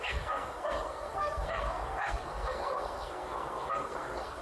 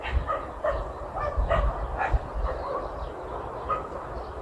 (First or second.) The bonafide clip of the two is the second